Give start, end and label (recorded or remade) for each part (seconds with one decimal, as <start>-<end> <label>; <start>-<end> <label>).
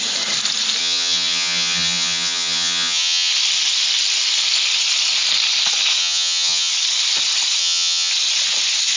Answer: 0.0-0.8 recorded; 0.8-3.3 remade; 3.3-6.0 recorded; 6.0-6.7 remade; 6.7-7.6 recorded; 7.6-8.1 remade; 8.1-9.0 recorded